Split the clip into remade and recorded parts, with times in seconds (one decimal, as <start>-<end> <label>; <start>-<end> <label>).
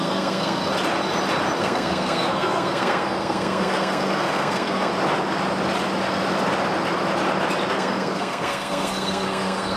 0.0-0.7 remade; 0.7-1.6 recorded; 1.6-4.9 remade; 4.9-7.7 recorded; 7.7-9.8 remade